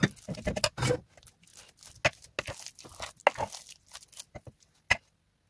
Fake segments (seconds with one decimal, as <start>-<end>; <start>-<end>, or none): none